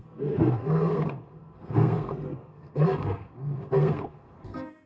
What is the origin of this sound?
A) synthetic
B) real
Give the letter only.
A